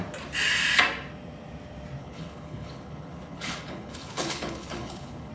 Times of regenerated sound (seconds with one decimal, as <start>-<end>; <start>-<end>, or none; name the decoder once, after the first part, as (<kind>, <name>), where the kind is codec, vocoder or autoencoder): 2.0-5.3 (codec, HILCodec)